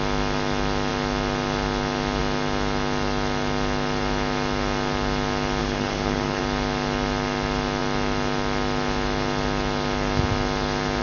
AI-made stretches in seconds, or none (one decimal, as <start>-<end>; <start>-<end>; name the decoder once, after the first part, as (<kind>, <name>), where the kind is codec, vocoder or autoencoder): 5.6-6.4 (codec, HILCodec)